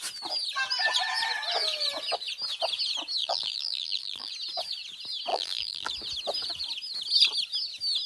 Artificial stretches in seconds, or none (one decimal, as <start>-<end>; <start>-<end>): 3.2-4.3; 5.3-5.9